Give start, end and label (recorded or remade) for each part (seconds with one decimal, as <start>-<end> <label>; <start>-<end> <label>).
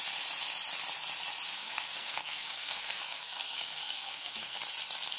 0.0-1.5 recorded; 1.5-4.6 remade; 4.6-5.2 recorded